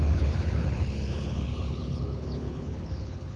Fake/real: fake